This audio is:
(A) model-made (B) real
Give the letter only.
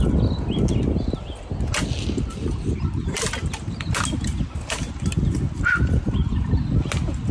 B